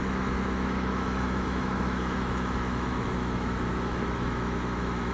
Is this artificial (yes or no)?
yes